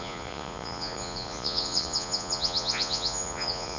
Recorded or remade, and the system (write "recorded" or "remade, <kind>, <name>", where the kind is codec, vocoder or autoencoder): remade, vocoder, Vocos